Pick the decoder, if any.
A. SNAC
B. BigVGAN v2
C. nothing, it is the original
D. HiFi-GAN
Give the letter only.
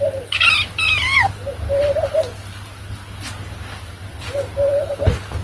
C